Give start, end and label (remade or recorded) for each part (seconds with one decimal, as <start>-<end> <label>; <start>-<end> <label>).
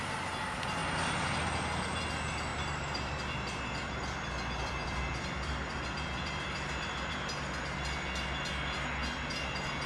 0.0-2.5 recorded; 2.5-7.3 remade; 7.3-9.9 recorded